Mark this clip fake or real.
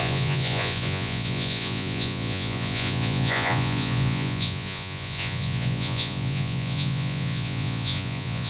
fake